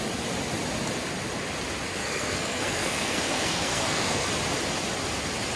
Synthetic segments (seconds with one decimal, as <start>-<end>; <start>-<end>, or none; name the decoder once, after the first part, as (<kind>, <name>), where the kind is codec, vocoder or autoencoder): 2.0-4.3 (codec, SNAC)